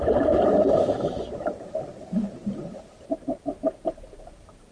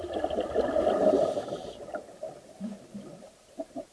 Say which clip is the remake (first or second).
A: first